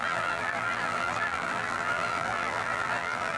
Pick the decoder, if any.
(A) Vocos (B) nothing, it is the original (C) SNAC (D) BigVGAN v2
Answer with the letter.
D